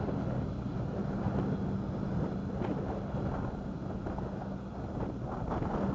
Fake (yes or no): no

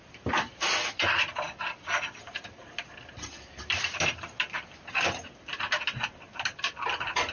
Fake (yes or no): no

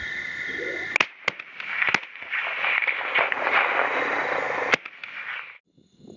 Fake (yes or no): no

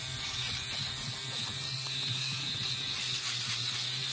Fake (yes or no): no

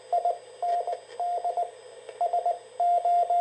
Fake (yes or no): no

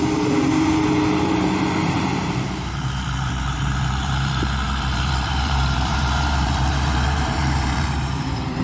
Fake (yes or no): yes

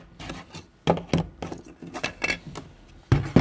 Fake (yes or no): no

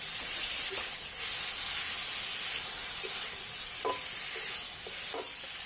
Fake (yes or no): no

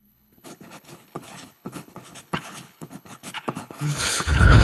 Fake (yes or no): yes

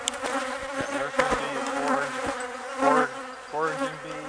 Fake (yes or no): no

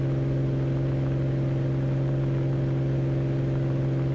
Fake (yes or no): no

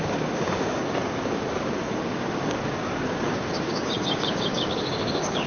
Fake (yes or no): yes